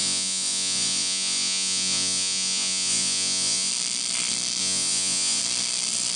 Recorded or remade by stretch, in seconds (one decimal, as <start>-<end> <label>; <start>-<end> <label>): 0.0-3.7 remade; 3.7-4.6 recorded; 4.6-5.4 remade; 5.4-6.2 recorded